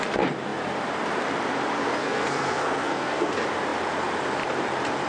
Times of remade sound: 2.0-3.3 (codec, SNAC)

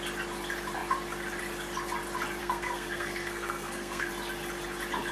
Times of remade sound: 2.4-4.1 (codec, SNAC)